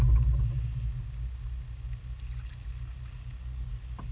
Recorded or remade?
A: recorded